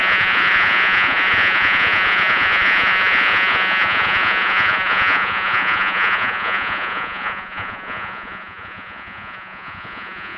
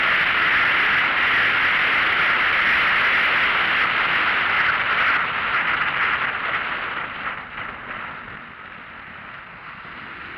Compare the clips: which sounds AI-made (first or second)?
first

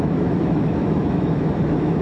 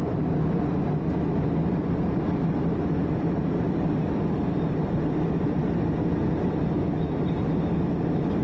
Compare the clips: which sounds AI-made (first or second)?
first